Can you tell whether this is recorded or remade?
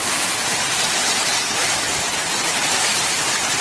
recorded